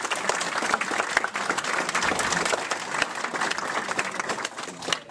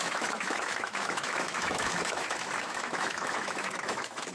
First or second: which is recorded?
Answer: first